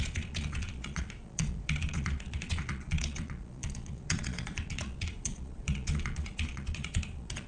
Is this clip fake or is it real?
fake